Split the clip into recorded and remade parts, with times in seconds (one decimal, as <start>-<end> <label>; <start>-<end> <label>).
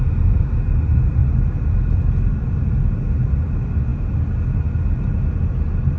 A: 0.0-6.0 recorded